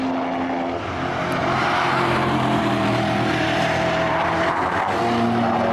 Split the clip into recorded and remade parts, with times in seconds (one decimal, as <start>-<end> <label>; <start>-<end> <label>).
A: 0.0-1.4 recorded; 1.4-4.8 remade; 4.8-5.7 recorded